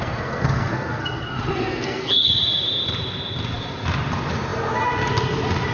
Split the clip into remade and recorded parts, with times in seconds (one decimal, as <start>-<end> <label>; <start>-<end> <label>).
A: 0.0-2.4 remade; 2.4-5.7 recorded